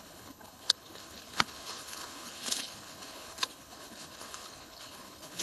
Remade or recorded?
remade